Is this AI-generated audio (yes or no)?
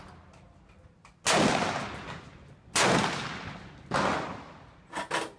no